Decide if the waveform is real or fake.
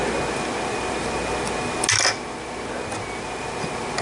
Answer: real